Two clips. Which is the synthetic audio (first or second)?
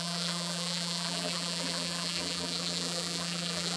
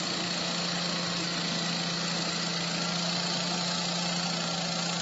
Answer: first